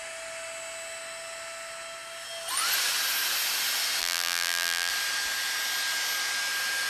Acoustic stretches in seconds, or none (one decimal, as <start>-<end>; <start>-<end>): 0.0-4.0; 4.9-6.9